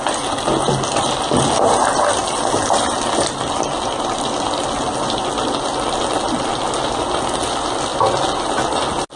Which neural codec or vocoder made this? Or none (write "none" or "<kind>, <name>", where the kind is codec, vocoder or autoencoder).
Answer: none